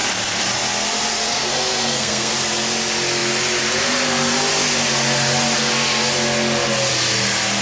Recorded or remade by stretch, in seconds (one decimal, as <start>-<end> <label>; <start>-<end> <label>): 0.0-1.3 recorded; 1.3-2.3 remade; 2.3-7.6 recorded